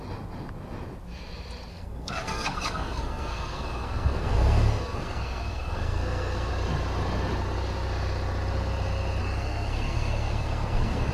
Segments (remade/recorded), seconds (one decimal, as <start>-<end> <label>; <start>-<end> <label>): 0.0-1.7 recorded; 1.7-6.5 remade; 6.5-9.2 recorded; 9.2-11.1 remade